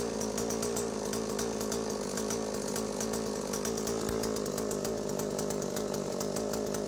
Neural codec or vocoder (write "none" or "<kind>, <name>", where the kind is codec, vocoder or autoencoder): none